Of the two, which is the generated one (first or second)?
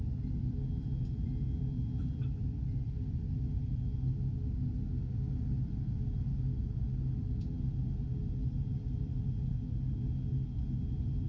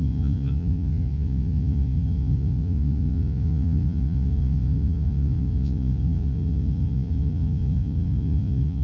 second